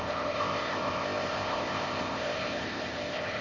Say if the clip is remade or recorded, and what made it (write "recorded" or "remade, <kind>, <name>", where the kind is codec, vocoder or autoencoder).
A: remade, codec, ZipCodec